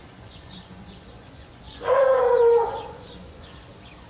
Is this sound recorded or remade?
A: remade